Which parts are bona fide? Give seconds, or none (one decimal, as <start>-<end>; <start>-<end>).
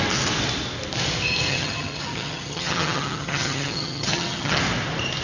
0.0-1.5; 4.6-5.2